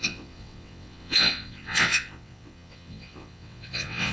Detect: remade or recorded remade